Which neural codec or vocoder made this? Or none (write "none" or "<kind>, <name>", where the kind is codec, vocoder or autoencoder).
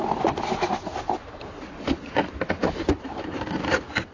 none